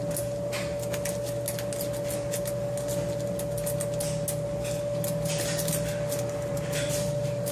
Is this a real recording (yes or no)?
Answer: yes